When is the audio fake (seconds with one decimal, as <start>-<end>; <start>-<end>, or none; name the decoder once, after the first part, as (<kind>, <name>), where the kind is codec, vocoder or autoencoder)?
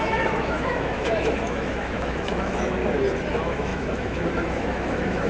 0.0-2.8 (autoencoder, DAC-VAE); 3.3-5.3